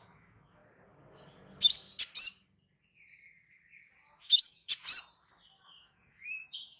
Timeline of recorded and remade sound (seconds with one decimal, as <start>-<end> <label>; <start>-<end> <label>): 0.0-0.6 remade; 0.6-4.2 recorded; 4.2-4.7 remade; 4.7-5.6 recorded; 5.6-6.8 remade